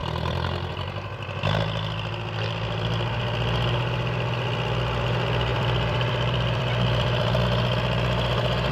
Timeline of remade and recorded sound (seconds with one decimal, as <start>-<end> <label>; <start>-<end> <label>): 0.0-0.7 remade; 0.7-5.5 recorded; 5.5-7.4 remade; 7.4-8.7 recorded